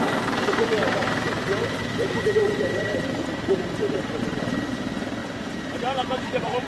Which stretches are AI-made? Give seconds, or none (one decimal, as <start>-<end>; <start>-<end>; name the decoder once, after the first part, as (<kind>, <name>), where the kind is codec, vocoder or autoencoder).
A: 1.6-4.2 (vocoder, BigVGAN v2); 5.2-5.8